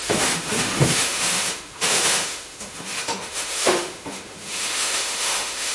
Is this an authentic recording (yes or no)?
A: no